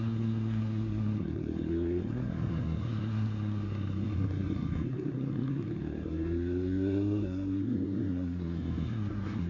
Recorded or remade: remade